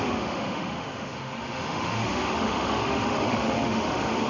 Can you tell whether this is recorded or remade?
remade